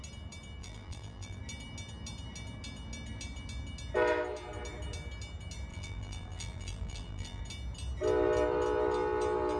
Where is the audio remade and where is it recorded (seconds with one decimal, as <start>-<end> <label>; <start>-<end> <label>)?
0.0-0.6 recorded; 0.6-1.4 remade; 1.4-5.7 recorded; 5.7-7.4 remade; 7.4-9.6 recorded